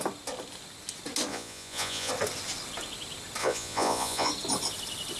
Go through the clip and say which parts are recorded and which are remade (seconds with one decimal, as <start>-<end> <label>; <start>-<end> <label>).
0.0-1.3 recorded; 1.3-2.1 remade; 2.1-3.4 recorded; 3.4-4.3 remade; 4.3-5.2 recorded